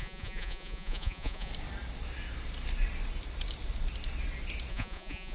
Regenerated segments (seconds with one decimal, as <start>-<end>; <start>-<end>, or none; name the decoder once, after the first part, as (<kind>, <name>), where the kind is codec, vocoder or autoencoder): 0.0-1.5 (vocoder, Vocos); 4.7-5.3